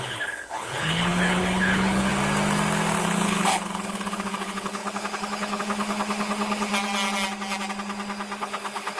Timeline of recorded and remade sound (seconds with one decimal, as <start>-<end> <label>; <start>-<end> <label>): 0.0-2.1 remade; 2.1-3.0 recorded; 3.0-6.7 remade; 6.7-8.4 recorded; 8.4-9.0 remade